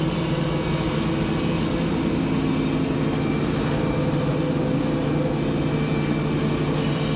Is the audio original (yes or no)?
yes